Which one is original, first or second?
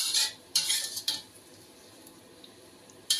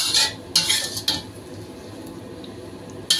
second